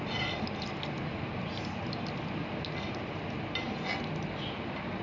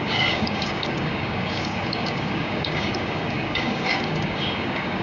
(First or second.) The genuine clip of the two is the first